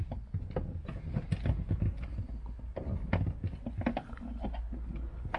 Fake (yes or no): no